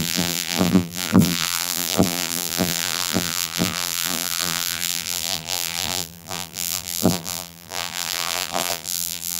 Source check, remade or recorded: remade